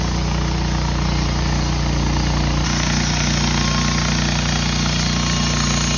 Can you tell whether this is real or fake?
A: real